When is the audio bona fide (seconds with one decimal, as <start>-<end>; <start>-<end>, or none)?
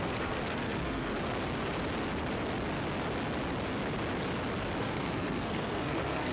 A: 1.1-4.8